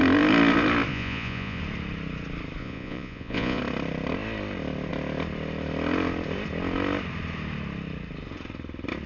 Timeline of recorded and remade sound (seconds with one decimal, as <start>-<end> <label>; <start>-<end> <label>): 0.0-0.9 recorded; 0.9-1.6 remade; 1.6-2.6 recorded; 2.6-3.6 remade; 3.6-9.1 recorded